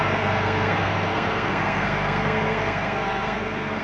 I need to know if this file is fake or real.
fake